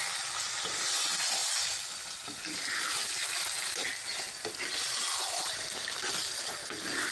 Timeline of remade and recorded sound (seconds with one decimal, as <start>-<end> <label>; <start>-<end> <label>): 0.0-7.1 recorded